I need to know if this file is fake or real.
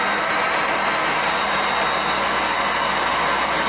real